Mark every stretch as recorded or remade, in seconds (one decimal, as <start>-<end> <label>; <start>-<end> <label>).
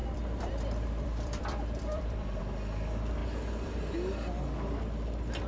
0.0-2.4 remade; 2.4-3.2 recorded; 3.2-4.1 remade; 4.1-5.5 recorded